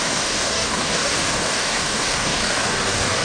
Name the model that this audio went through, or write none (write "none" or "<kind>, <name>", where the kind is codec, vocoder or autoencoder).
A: codec, DAC